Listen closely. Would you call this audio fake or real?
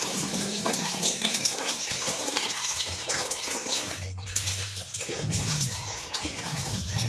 fake